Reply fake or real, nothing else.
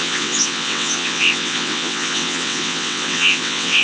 fake